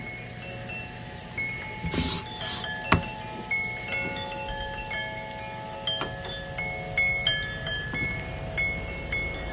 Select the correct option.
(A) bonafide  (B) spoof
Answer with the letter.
A